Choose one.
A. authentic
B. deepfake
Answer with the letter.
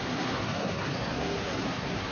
B